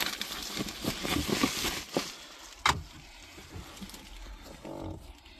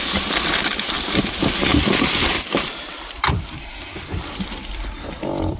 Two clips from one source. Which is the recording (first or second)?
first